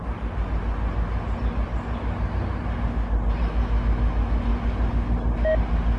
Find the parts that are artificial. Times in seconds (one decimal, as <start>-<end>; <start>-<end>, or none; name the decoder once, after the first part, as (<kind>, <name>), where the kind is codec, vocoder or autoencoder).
3.4-4.5 (autoencoder, DAC-VAE)